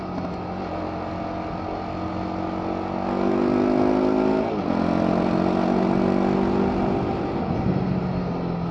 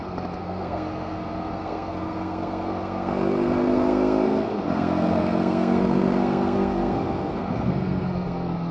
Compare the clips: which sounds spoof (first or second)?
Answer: second